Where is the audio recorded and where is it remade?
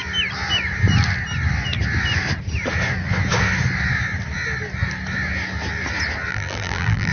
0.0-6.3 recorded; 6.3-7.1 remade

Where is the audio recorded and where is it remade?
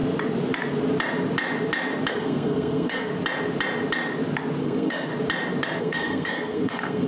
0.0-2.1 recorded; 2.1-3.1 remade; 3.1-4.6 recorded; 4.6-5.1 remade; 5.1-5.8 recorded; 5.8-7.1 remade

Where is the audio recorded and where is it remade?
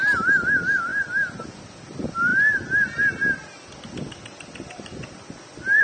0.0-5.8 recorded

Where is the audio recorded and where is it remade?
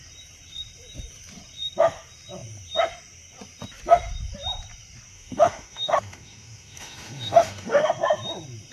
0.0-5.1 recorded; 5.1-7.9 remade; 7.9-8.7 recorded